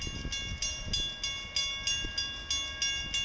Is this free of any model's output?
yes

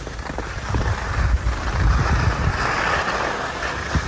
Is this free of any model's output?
yes